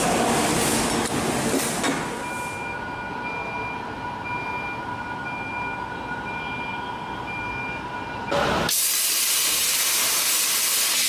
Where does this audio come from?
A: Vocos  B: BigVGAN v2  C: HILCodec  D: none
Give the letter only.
D